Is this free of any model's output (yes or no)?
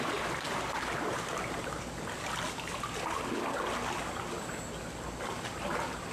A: yes